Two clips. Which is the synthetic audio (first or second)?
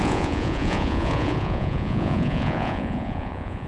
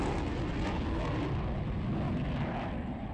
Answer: first